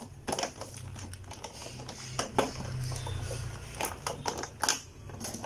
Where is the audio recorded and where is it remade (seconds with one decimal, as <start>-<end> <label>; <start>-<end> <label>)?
0.0-5.5 recorded

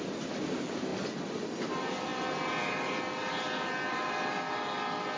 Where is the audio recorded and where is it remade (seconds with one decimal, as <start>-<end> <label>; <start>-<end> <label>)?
0.0-5.2 recorded

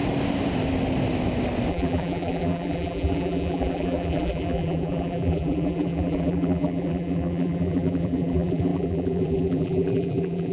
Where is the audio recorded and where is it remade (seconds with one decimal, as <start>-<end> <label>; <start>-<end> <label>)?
0.0-1.7 recorded; 1.7-10.5 remade

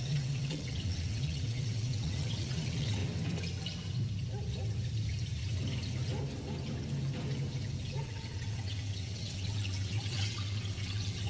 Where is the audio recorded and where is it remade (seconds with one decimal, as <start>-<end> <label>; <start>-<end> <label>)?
0.0-3.0 remade; 3.0-8.0 recorded; 8.0-11.3 remade

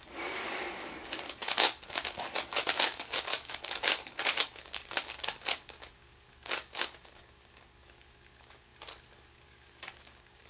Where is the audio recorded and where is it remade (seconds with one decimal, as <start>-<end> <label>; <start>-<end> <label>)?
0.0-8.7 remade; 8.7-9.3 recorded; 9.3-10.5 remade

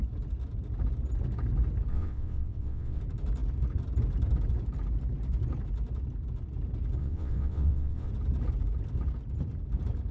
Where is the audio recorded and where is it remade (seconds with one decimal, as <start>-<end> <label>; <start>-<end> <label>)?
0.0-1.9 recorded; 1.9-3.0 remade; 3.0-7.0 recorded; 7.0-8.1 remade; 8.1-10.1 recorded